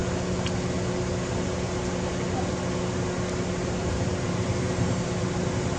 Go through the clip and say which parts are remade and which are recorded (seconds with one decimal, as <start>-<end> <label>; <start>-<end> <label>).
0.0-3.6 recorded; 3.6-5.1 remade; 5.1-5.8 recorded